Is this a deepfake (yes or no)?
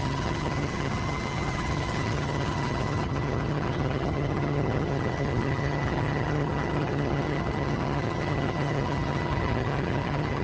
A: yes